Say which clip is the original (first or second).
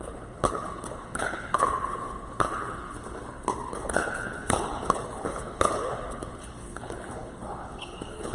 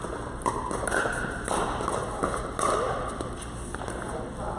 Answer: second